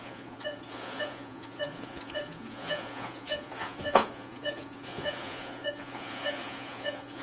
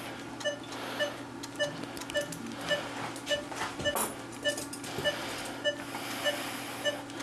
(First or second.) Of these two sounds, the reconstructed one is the first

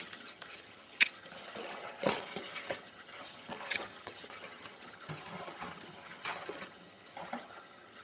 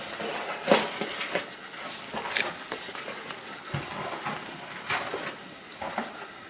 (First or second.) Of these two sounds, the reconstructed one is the first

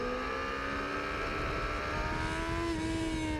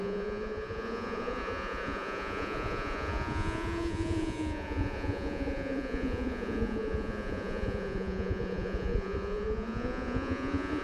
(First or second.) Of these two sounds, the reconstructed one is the second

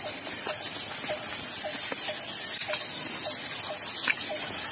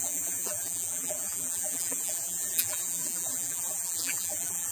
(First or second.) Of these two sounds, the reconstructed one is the second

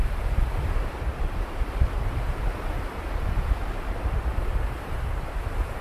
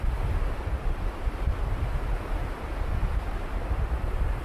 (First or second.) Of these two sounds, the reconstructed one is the first